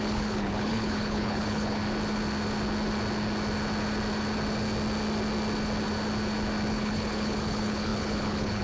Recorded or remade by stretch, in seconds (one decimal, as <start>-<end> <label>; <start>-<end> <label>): 0.0-1.8 remade; 1.8-6.7 recorded; 6.7-8.6 remade